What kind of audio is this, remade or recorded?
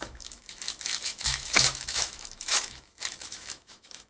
remade